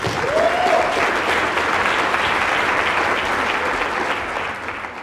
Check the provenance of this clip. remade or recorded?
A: recorded